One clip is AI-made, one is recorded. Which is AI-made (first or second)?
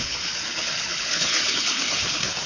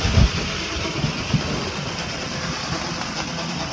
first